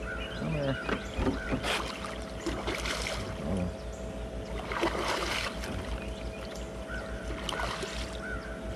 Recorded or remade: recorded